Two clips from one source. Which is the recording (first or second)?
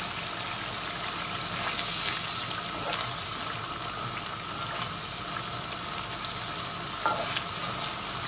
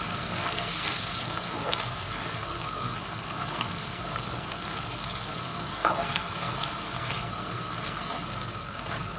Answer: first